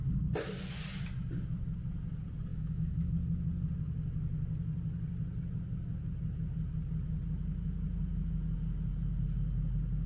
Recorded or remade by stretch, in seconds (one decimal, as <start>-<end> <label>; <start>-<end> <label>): 0.0-2.5 recorded; 2.5-3.1 remade; 3.1-10.1 recorded